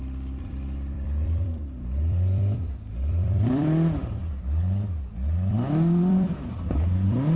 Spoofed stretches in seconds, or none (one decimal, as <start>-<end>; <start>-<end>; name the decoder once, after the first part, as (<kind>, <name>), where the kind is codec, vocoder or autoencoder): 0.0-4.2 (vocoder, BigVGAN v2); 5.5-7.4